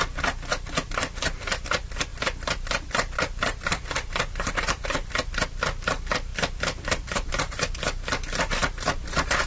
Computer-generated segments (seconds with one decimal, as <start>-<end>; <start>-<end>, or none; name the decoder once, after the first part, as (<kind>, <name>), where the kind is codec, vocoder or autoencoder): 2.1-5.3 (vocoder, BigVGAN v2); 6.3-7.3